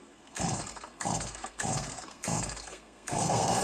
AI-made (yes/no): yes